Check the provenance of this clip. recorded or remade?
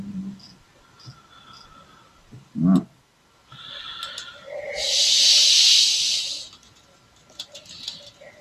recorded